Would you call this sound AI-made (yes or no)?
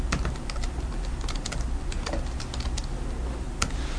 no